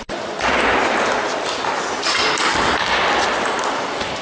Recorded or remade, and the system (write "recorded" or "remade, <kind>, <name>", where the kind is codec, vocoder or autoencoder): recorded